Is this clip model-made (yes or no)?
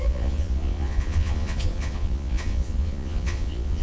yes